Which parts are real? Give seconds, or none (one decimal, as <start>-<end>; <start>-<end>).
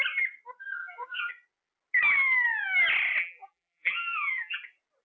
0.0-0.8; 1.3-3.2; 4.6-5.0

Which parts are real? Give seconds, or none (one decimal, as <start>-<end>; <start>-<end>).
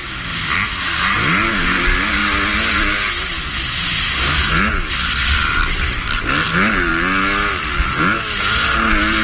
0.0-9.2